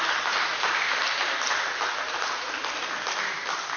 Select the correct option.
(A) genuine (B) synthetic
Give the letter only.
A